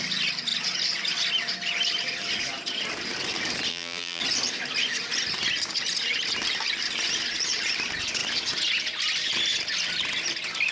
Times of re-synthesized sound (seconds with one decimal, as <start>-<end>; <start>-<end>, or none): 3.7-4.2